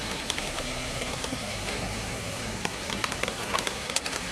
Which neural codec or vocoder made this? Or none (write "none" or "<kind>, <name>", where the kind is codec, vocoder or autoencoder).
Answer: codec, SNAC